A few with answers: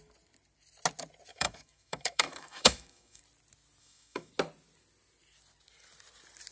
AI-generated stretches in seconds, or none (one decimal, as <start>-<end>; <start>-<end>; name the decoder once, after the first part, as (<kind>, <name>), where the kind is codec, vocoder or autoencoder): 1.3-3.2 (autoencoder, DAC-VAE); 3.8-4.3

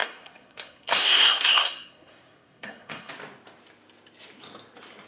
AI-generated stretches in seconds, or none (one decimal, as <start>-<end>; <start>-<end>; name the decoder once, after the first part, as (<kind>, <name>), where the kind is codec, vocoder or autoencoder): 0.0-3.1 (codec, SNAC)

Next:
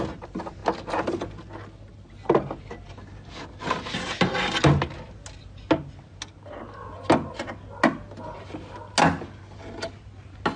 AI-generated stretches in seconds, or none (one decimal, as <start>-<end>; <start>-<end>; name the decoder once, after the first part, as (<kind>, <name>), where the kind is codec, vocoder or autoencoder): none

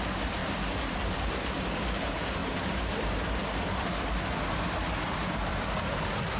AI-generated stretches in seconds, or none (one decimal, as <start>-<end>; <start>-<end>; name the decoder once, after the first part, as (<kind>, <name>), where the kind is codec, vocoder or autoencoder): 0.4-1.3 (vocoder, BigVGAN v2); 2.4-4.0; 5.5-6.4

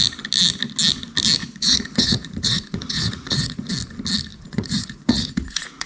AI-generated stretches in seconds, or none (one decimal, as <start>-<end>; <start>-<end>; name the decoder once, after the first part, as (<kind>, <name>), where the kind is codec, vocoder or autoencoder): 1.4-3.7 (vocoder, Vocos); 4.3-5.9

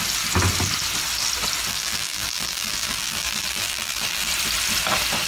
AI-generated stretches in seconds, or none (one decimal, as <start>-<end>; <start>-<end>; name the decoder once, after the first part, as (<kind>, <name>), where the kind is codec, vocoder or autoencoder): 1.7-4.3 (vocoder, BigVGAN v2)

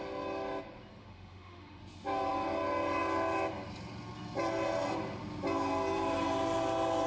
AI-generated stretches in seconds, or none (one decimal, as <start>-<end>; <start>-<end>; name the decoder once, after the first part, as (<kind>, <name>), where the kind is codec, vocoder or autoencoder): 1.0-1.8 (autoencoder, DAC-VAE)